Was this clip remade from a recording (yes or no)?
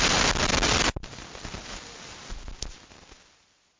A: no